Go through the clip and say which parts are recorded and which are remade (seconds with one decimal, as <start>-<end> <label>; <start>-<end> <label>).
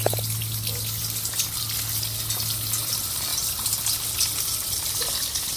0.0-2.8 recorded; 2.8-3.3 remade; 3.3-4.1 recorded; 4.1-5.6 remade